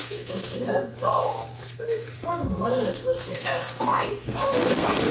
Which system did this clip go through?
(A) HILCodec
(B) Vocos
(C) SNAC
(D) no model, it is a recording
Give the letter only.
C